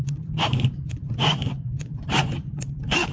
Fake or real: fake